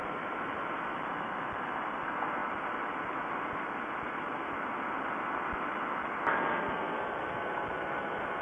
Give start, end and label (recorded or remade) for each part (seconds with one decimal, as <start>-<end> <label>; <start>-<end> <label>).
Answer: 0.0-0.8 remade; 0.8-8.4 recorded